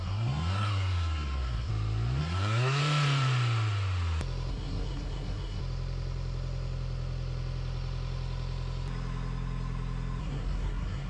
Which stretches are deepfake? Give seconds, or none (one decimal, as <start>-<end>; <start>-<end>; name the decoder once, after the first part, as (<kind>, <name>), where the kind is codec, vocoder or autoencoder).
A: 0.0-1.7 (codec, SNAC); 2.2-2.8; 4.5-5.6; 10.2-11.1

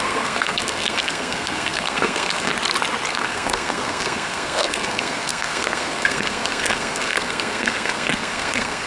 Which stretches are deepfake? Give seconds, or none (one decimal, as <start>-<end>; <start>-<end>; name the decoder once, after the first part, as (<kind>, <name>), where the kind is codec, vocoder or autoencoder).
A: 0.0-2.5 (codec, SNAC); 3.1-8.9

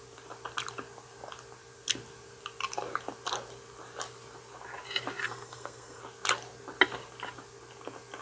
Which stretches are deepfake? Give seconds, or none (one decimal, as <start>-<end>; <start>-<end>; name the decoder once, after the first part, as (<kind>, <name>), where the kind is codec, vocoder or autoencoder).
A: 5.2-6.0 (codec, SNAC)

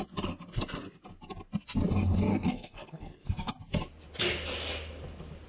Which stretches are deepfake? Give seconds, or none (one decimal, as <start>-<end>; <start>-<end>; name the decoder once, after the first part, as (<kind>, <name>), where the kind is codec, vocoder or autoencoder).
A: 2.3-3.5 (codec, SNAC)

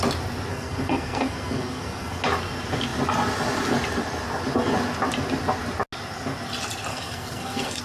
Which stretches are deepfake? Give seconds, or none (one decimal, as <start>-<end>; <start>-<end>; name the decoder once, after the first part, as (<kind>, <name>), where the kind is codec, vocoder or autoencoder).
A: 0.5-2.2 (codec, SNAC); 6.9-7.8

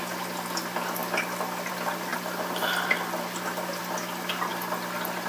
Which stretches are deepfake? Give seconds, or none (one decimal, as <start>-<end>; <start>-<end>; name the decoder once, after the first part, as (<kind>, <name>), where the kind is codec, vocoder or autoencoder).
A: none

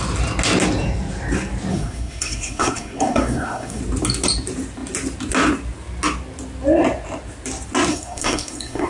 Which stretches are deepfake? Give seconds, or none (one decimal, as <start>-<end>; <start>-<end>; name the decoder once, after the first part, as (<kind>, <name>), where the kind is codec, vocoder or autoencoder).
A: 1.7-3.8 (codec, SNAC); 7.9-8.9